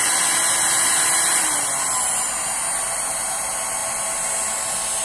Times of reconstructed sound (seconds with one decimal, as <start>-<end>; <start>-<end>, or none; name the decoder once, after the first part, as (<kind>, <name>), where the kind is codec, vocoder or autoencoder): none

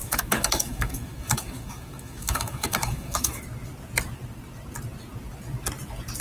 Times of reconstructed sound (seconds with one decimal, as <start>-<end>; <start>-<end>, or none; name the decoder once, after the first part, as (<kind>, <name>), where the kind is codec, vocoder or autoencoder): 0.0-3.4 (autoencoder, DAC-VAE)

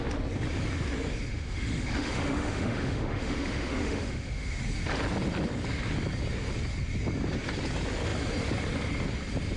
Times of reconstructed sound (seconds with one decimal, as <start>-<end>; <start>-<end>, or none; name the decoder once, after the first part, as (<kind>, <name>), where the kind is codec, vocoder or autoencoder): 1.3-4.6 (autoencoder, DAC-VAE)

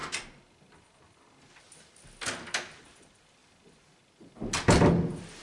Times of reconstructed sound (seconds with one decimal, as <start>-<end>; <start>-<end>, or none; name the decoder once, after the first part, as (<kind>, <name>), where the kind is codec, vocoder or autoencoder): none

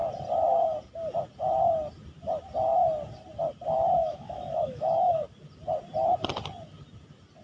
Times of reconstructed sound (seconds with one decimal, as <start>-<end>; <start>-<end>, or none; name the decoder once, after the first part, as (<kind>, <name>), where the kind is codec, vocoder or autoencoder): 4.0-5.2 (autoencoder, DAC-VAE)

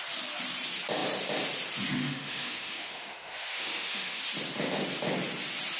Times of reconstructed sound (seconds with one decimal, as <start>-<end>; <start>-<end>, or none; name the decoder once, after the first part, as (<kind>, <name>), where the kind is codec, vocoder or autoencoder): 2.0-4.2 (autoencoder, DAC-VAE)

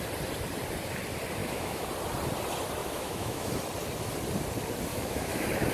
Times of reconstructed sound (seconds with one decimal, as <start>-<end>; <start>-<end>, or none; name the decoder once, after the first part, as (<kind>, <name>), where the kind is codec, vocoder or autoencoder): 1.4-1.9 (autoencoder, DAC-VAE); 2.8-3.5; 4.9-5.7